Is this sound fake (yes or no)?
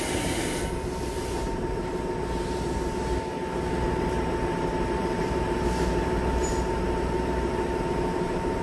yes